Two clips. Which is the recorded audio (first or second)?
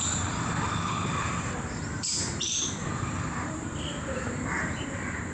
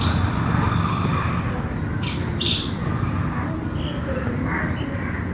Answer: second